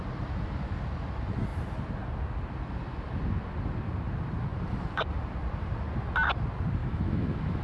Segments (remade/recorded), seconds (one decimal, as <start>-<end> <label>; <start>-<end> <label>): 0.0-6.8 recorded; 6.8-7.6 remade